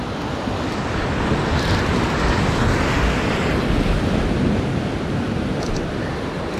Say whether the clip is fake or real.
real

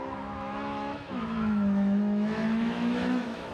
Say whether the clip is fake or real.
fake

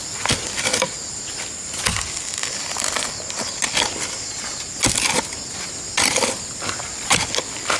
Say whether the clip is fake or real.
real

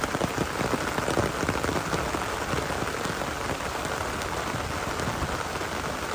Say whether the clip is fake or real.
real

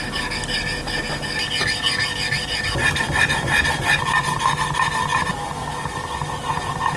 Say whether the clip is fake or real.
real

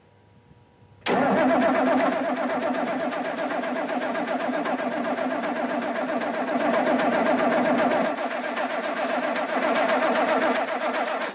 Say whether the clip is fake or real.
real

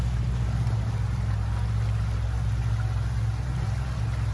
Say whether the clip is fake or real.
real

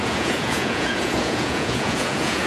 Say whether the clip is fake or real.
fake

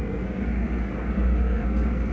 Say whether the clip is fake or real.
fake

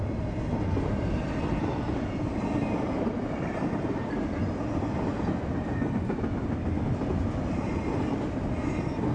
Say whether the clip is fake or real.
real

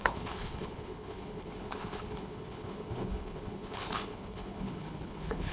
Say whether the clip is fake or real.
fake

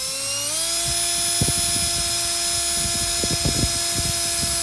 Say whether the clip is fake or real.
real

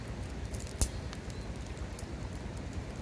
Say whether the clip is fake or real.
real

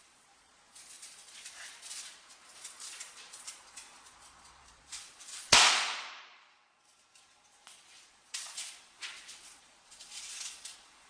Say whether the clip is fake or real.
fake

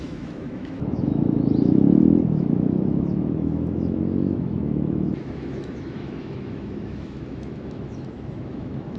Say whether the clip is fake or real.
fake